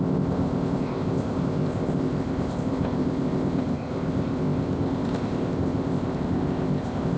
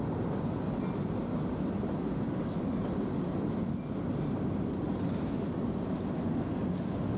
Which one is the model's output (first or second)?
first